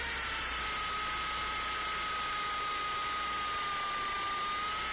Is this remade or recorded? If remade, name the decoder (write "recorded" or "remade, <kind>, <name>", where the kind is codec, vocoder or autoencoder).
recorded